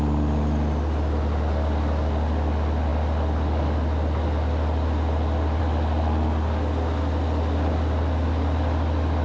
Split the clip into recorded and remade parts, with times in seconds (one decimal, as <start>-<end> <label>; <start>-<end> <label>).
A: 0.0-9.2 recorded